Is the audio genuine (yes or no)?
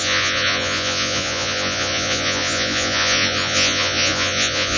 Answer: no